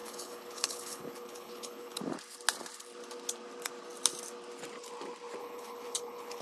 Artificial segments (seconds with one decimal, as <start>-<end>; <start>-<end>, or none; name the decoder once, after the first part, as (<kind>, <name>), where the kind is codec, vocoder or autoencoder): 0.0-2.0 (codec, HILCodec); 5.4-6.4